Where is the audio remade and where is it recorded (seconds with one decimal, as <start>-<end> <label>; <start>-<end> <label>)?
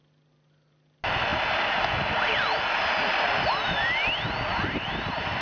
0.0-5.4 recorded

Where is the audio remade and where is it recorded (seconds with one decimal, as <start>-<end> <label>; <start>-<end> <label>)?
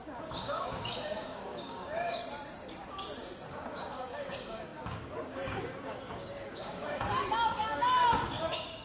0.0-2.2 remade; 2.2-3.5 recorded; 3.5-8.8 remade